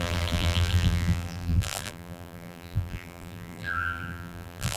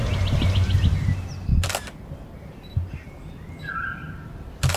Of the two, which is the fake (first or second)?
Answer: first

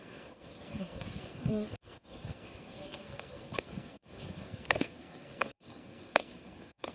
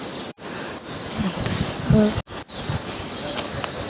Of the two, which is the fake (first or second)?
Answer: first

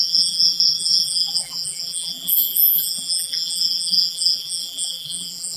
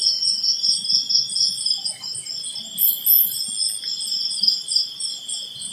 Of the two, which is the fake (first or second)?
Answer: first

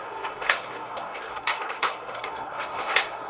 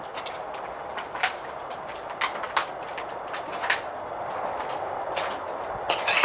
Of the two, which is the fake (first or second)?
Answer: first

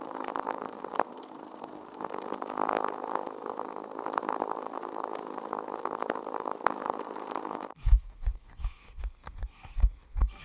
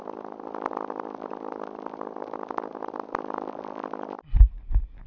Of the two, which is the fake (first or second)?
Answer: first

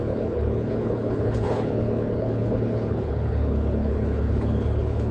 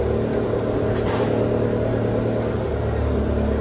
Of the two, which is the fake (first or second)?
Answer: first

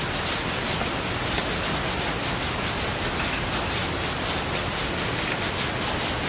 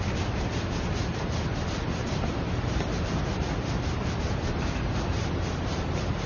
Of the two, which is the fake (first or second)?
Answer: second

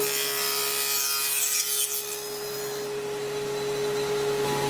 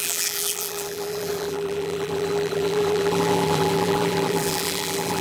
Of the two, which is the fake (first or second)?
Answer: second